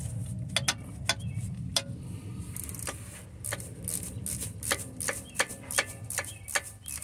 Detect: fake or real real